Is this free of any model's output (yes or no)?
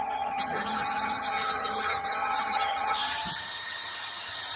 no